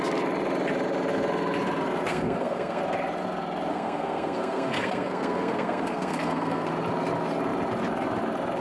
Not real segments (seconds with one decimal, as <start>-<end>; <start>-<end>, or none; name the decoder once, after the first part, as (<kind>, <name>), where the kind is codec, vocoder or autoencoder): 2.1-2.8 (codec, SNAC); 3.7-6.7